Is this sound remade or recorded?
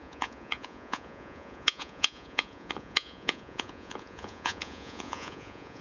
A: remade